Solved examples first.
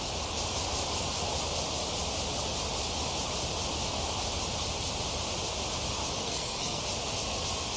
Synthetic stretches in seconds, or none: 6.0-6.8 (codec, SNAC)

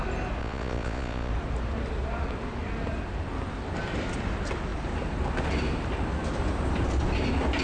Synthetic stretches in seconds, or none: 0.4-1.3 (vocoder, Vocos)

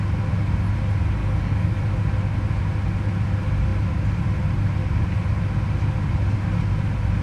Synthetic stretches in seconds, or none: 1.2-1.8 (codec, DAC)

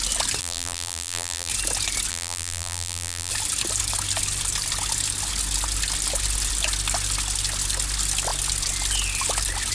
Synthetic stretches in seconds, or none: 0.4-1.5 (vocoder, BigVGAN v2); 2.1-3.3

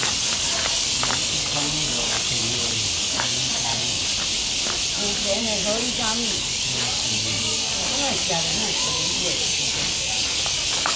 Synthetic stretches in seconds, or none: 0.0-2.4 (codec, DAC); 3.0-4.0; 5.4-11.0